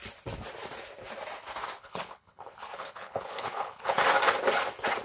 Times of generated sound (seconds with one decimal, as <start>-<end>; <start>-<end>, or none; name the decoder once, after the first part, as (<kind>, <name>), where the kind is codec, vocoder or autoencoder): 1.8-4.0 (codec, HILCodec)